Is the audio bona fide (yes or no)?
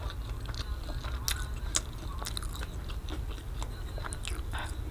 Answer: yes